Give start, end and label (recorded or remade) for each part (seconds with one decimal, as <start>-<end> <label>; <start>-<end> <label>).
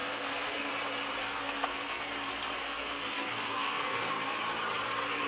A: 0.0-0.7 remade; 0.7-1.2 recorded; 1.2-2.1 remade; 2.1-2.6 recorded; 2.6-4.1 remade; 4.1-5.3 recorded